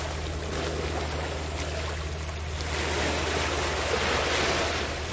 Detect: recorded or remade recorded